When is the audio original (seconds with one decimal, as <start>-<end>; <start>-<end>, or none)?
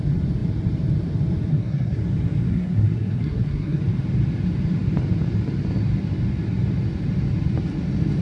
0.0-1.5; 2.0-2.5; 3.8-8.2